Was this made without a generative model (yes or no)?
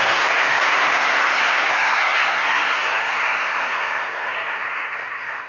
no